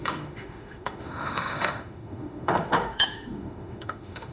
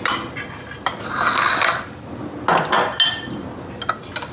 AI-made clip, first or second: first